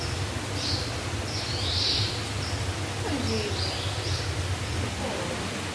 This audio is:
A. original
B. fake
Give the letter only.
A